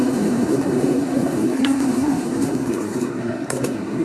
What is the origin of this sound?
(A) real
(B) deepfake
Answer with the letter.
B